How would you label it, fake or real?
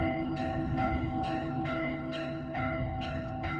fake